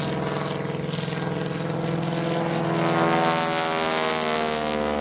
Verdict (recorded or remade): recorded